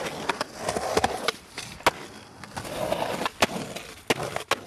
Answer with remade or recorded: recorded